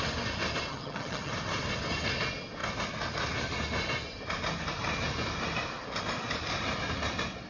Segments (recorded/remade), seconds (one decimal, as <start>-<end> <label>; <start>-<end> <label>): 0.0-0.7 recorded; 0.7-1.3 remade; 1.3-7.5 recorded